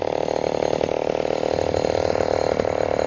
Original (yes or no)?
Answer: yes